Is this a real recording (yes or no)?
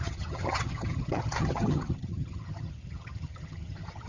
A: no